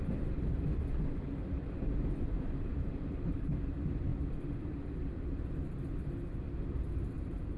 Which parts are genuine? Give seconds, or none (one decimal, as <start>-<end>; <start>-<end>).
0.0-2.3; 3.3-4.1; 5.5-6.9